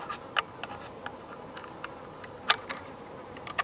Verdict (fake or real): real